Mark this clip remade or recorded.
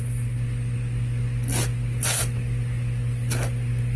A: recorded